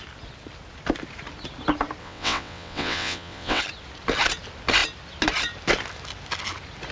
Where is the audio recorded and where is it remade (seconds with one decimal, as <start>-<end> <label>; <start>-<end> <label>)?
0.0-2.0 recorded; 2.0-3.6 remade; 3.6-6.9 recorded

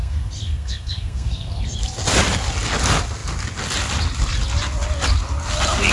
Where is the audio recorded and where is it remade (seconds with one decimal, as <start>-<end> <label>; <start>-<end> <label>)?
0.0-1.8 remade; 1.8-5.9 recorded

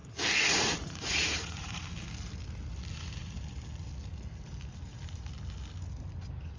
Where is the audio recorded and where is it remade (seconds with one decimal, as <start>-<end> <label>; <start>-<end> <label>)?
0.0-1.8 remade; 1.8-6.6 recorded

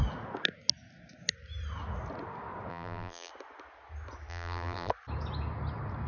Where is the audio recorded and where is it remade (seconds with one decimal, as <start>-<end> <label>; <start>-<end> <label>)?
0.0-2.7 recorded; 2.7-3.3 remade; 3.3-4.3 recorded; 4.3-4.9 remade; 4.9-6.1 recorded

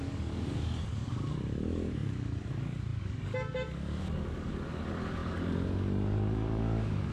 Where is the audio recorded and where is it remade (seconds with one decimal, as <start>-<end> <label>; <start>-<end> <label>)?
0.0-7.1 remade

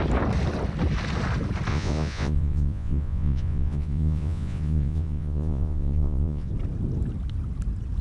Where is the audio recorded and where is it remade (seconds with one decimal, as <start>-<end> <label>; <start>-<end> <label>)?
0.0-1.7 recorded; 1.7-6.5 remade; 6.5-8.0 recorded

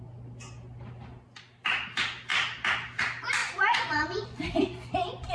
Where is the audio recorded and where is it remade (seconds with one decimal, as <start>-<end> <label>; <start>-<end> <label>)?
0.0-3.4 recorded; 3.4-5.3 remade